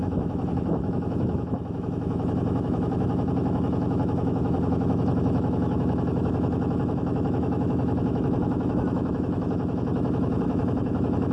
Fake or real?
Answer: fake